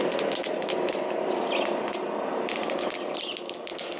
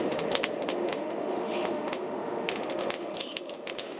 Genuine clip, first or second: first